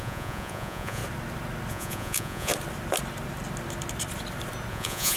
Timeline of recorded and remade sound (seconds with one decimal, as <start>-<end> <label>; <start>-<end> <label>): 0.0-1.0 remade; 1.0-1.7 recorded; 1.7-2.5 remade; 2.5-4.7 recorded; 4.7-5.2 remade